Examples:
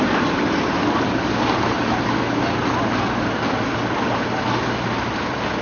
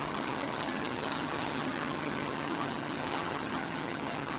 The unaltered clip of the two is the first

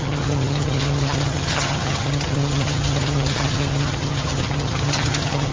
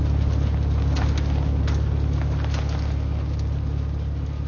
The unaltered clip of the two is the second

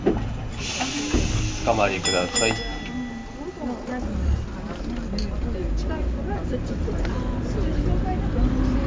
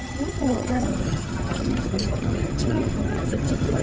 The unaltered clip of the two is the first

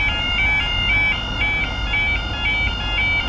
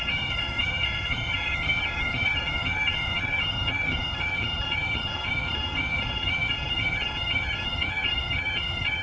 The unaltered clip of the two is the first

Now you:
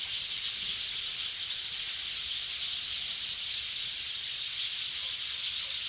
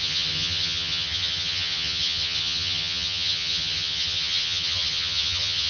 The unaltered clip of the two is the first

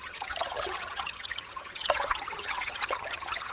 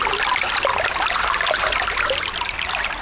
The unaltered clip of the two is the second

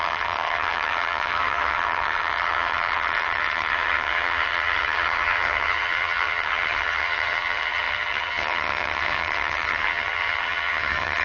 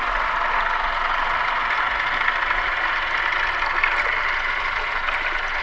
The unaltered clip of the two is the second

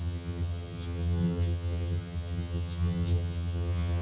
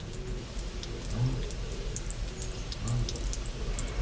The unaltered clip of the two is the second